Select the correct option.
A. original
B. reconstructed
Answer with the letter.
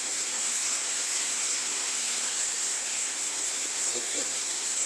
B